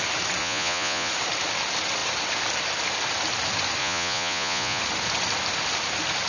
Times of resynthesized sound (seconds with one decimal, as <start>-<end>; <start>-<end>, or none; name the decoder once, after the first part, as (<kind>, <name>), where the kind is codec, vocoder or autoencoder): 0.4-1.1 (vocoder, Vocos); 3.8-4.8